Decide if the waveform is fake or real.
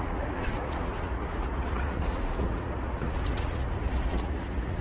fake